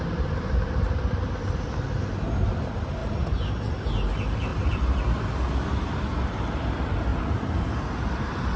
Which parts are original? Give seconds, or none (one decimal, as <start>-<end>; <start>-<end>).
0.0-3.0; 3.5-4.5; 5.0-7.1; 7.7-8.6